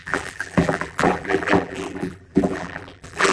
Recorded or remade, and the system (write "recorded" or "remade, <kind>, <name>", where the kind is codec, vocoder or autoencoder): remade, vocoder, BigVGAN v2